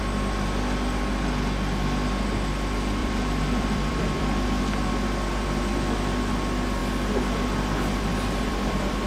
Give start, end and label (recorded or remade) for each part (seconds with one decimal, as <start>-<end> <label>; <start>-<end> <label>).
0.0-3.0 recorded; 3.0-4.6 remade; 4.6-9.1 recorded